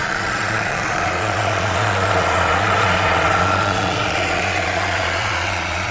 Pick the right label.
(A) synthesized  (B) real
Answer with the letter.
A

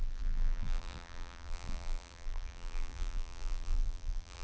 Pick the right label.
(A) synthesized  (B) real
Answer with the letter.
A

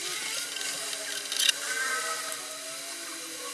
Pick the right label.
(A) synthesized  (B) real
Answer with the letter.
B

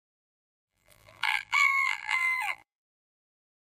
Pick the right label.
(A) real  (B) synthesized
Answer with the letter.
B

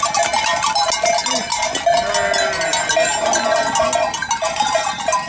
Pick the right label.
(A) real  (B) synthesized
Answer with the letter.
A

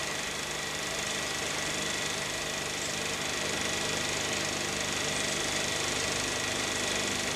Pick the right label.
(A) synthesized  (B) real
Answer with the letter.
B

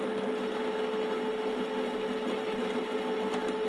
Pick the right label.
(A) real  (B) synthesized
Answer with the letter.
A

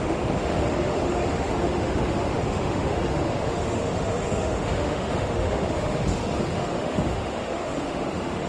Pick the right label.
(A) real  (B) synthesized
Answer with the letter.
B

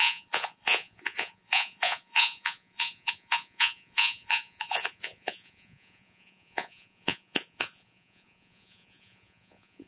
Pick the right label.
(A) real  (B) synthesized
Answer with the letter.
B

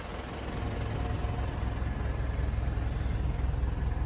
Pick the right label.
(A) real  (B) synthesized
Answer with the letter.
A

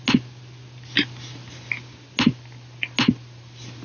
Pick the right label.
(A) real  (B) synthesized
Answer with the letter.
A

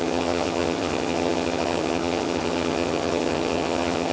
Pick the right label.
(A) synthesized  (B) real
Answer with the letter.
A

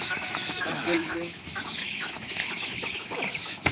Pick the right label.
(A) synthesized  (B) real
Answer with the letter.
A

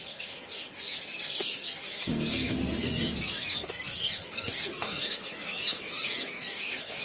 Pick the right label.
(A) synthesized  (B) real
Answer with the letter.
A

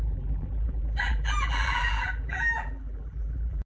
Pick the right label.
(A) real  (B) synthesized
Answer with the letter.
B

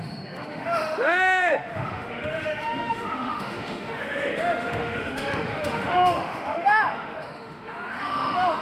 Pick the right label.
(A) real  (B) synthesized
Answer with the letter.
B